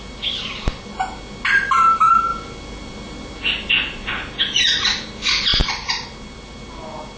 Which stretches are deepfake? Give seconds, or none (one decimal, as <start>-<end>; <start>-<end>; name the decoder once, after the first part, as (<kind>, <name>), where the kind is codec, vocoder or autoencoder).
none